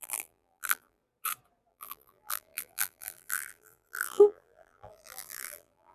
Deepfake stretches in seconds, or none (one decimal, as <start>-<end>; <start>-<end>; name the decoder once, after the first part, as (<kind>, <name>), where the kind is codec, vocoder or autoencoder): 0.0-1.0 (vocoder, BigVGAN v2); 1.7-5.9